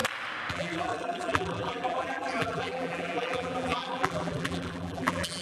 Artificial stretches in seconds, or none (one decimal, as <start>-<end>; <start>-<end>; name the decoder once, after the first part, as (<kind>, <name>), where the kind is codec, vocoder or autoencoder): 0.5-5.4 (vocoder, BigVGAN v2)